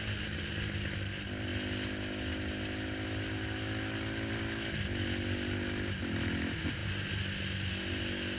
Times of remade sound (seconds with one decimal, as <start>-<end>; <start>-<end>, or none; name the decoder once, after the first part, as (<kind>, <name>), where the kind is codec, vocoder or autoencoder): none